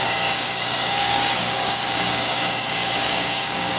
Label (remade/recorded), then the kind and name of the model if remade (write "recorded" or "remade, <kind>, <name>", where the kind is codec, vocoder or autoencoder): remade, codec, DAC